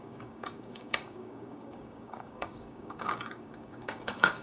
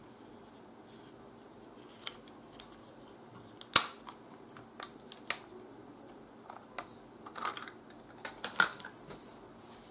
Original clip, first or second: second